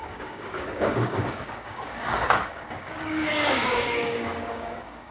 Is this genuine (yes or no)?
no